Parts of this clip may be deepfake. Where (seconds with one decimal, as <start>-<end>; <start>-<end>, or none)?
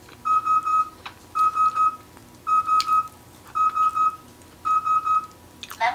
0.7-1.2